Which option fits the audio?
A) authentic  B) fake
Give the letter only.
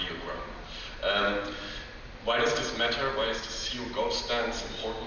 A